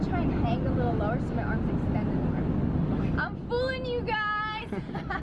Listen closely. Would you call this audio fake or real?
real